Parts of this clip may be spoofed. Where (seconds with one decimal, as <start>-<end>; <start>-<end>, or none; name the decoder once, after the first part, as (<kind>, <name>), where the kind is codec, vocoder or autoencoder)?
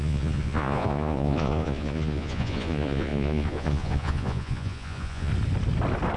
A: 0.0-5.3 (vocoder, Vocos)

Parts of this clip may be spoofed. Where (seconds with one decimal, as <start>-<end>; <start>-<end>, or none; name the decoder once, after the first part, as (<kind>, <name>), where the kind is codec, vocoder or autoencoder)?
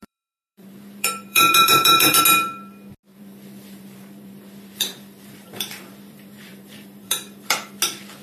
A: 0.0-2.2 (vocoder, BigVGAN v2); 3.1-7.7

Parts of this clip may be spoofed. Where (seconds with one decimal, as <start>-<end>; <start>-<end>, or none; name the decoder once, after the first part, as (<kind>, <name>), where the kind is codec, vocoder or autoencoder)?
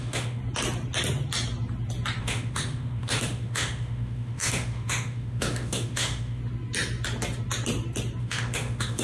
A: 0.0-0.4 (autoencoder, DAC-VAE); 2.2-6.4; 8.2-9.0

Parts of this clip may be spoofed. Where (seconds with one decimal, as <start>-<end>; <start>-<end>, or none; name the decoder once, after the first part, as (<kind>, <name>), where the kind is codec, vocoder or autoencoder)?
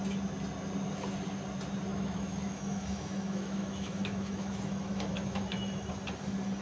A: 1.9-5.9 (autoencoder, DAC-VAE)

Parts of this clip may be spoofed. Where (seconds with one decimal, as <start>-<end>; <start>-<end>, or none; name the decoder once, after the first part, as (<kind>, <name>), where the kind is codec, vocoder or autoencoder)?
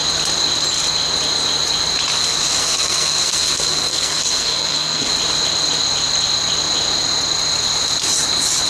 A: 2.6-5.1 (codec, SNAC)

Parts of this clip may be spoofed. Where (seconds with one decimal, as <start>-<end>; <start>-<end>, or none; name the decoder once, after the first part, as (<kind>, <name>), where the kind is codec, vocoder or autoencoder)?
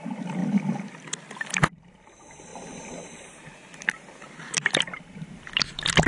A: none